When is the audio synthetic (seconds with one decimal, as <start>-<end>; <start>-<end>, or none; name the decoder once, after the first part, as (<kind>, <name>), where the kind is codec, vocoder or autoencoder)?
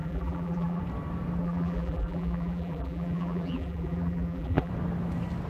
0.0-0.8 (vocoder, BigVGAN v2); 1.4-4.7